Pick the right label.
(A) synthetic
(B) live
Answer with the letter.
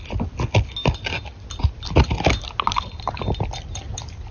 B